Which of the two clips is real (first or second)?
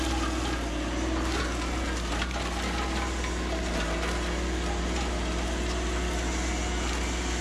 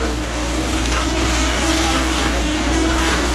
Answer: first